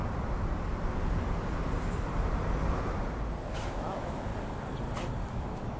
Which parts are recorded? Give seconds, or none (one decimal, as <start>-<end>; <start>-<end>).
0.0-3.5; 4.3-5.3